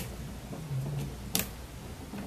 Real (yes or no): yes